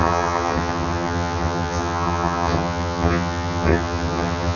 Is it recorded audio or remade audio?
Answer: remade